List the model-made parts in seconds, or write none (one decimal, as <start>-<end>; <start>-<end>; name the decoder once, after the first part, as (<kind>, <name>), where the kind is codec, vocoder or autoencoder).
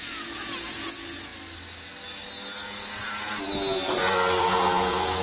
0.0-1.3 (vocoder, Vocos); 4.4-5.2